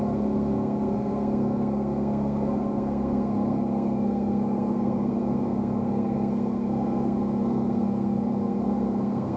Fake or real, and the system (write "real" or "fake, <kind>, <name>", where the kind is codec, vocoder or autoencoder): fake, codec, SNAC